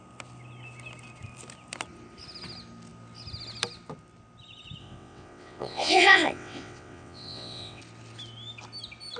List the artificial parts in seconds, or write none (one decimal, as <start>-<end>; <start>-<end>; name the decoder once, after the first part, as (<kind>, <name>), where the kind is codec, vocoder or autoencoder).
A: 4.8-7.8 (vocoder, WaveNeXt)